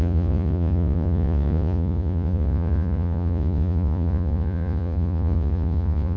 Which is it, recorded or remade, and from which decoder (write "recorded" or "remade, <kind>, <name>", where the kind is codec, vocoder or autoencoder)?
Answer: remade, vocoder, Vocos